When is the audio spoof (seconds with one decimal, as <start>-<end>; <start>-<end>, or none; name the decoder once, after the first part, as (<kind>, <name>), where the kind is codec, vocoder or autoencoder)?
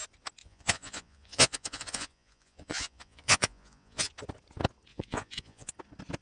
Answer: 0.4-4.1 (vocoder, Vocos); 4.9-5.7